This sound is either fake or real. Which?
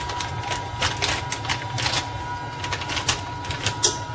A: real